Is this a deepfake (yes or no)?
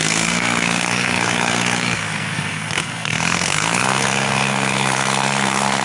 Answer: yes